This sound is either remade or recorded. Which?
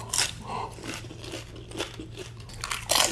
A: recorded